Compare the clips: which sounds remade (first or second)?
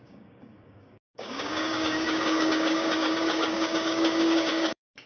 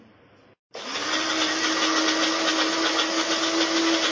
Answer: first